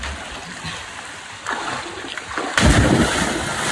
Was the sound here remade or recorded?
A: recorded